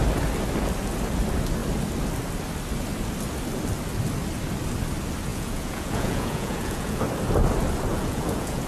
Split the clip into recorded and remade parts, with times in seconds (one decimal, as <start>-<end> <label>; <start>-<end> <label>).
0.0-5.3 recorded; 5.3-7.0 remade; 7.0-7.9 recorded; 7.9-8.7 remade